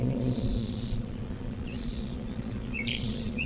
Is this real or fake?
fake